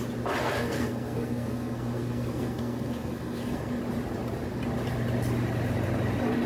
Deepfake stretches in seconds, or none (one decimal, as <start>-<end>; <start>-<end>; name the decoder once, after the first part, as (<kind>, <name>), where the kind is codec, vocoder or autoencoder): 0.4-3.8 (codec, SNAC)